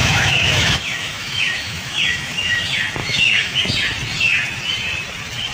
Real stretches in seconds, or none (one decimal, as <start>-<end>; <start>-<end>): 2.6-3.0; 3.6-5.5